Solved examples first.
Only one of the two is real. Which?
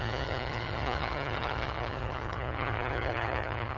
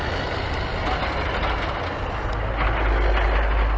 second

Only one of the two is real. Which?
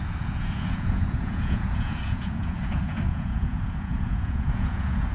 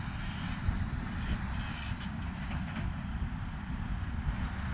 second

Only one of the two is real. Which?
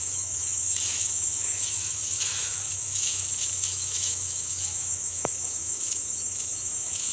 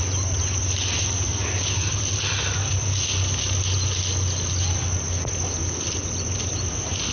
second